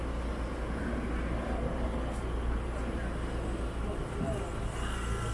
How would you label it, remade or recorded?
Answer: recorded